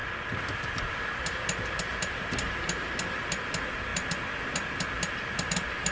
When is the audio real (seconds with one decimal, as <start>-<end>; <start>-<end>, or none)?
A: 0.0-5.9